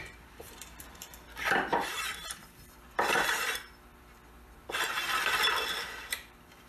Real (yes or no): no